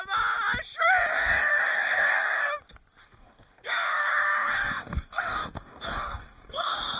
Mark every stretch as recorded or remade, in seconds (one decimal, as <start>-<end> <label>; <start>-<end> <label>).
0.0-1.1 recorded; 1.1-2.5 remade; 2.5-3.0 recorded; 3.0-7.0 remade